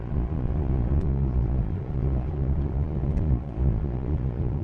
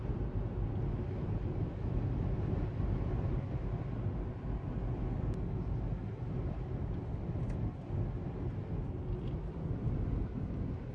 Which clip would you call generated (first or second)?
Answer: first